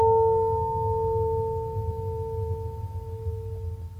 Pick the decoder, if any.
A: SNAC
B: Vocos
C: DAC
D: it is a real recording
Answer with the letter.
D